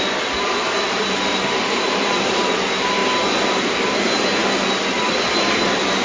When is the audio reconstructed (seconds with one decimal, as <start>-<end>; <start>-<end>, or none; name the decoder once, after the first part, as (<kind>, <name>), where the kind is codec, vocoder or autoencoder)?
0.0-3.0 (vocoder, BigVGAN v2); 3.5-4.4; 5.6-6.0